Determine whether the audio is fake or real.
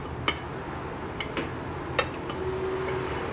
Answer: real